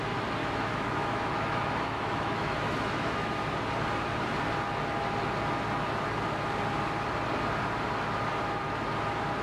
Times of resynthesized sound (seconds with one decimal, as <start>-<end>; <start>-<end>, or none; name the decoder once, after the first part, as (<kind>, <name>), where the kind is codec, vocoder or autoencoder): 0.4-3.4 (autoencoder, DAC-VAE)